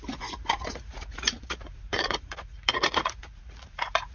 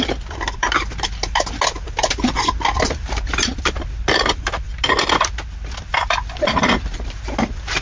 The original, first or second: second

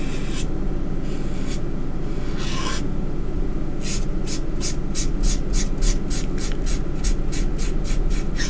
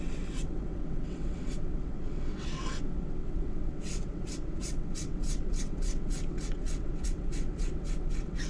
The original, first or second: first